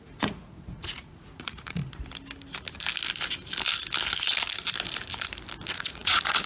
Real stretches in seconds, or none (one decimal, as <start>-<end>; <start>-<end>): 1.8-5.7